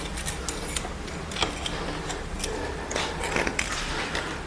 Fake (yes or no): no